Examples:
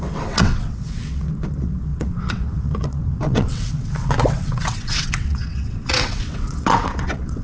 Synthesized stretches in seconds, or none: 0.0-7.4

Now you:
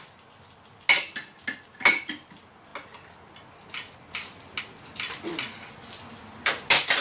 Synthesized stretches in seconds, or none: none

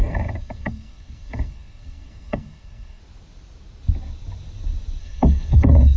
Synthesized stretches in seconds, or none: 0.0-3.0; 5.0-6.0

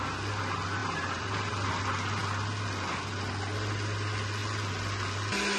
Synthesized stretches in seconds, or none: 0.8-1.7

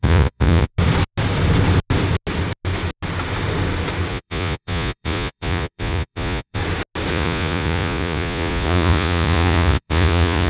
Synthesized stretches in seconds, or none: 0.0-0.7; 4.1-6.6; 7.1-10.5

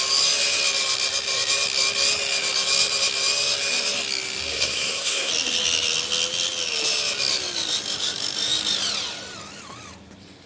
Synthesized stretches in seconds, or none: 4.5-5.3

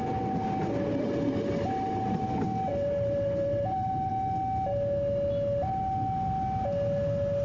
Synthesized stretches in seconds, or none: 2.7-4.1